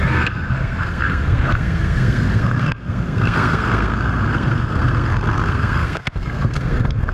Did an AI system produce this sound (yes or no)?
yes